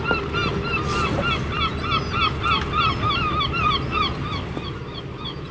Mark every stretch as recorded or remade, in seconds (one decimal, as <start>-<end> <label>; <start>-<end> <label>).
0.0-5.5 recorded